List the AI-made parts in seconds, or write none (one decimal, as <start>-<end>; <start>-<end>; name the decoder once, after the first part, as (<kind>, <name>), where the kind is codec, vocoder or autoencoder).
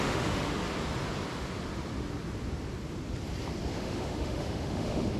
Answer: 0.0-0.6 (autoencoder, DAC-VAE); 3.7-5.2